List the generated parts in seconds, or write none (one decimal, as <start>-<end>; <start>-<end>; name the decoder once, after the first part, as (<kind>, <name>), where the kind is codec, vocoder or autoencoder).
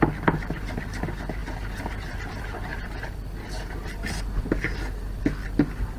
0.0-6.0 (vocoder, BigVGAN v2)